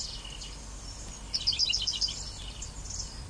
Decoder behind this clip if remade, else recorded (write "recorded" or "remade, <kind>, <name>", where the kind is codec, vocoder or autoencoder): remade, vocoder, BigVGAN v2